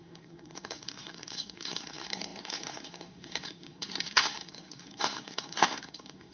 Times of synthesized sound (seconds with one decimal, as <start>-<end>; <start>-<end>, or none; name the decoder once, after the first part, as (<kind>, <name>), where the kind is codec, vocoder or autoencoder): 0.0-6.3 (codec, SNAC)